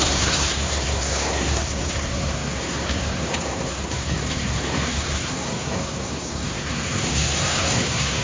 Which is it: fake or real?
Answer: fake